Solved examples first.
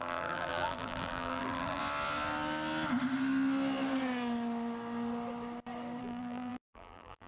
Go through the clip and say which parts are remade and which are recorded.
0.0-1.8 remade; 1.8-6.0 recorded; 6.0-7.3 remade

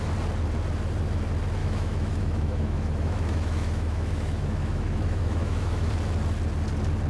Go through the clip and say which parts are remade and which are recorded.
0.0-1.6 recorded; 1.6-5.9 remade; 5.9-7.1 recorded

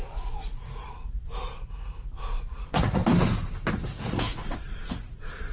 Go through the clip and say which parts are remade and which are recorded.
0.0-3.0 remade; 3.0-3.7 recorded; 3.7-5.5 remade

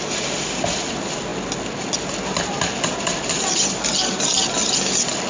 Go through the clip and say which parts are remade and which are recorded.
0.0-5.3 recorded

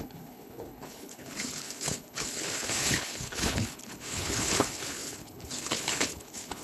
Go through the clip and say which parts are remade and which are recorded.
0.0-6.6 remade

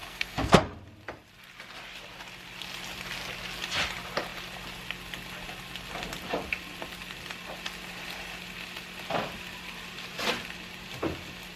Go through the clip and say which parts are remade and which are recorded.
0.0-0.6 remade; 0.6-11.6 recorded

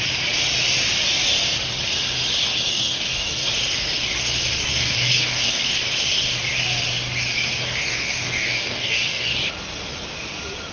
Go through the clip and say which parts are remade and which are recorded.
0.0-2.7 recorded; 2.7-3.5 remade; 3.5-4.7 recorded; 4.7-5.8 remade; 5.8-7.6 recorded; 7.6-9.5 remade; 9.5-10.7 recorded

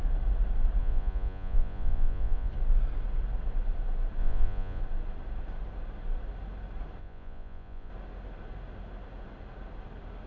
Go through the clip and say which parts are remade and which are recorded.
0.0-0.8 recorded; 0.8-2.5 remade; 2.5-4.2 recorded; 4.2-4.8 remade; 4.8-7.0 recorded; 7.0-7.9 remade; 7.9-10.3 recorded